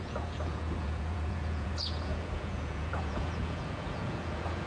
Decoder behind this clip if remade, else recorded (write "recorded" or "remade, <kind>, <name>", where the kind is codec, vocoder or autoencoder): remade, vocoder, Vocos